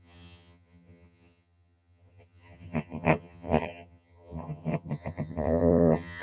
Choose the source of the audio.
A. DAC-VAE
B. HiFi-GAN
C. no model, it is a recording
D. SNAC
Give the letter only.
B